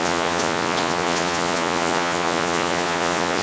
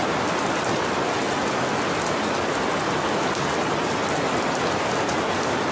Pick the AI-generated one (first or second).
first